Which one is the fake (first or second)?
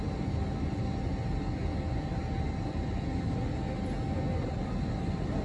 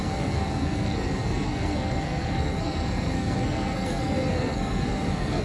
second